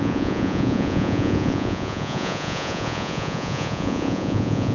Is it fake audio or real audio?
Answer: fake